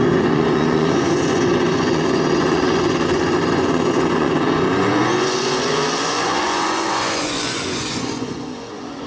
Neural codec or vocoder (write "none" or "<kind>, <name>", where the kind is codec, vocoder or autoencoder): vocoder, Vocos